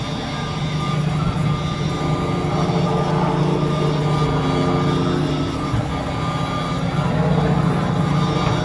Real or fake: real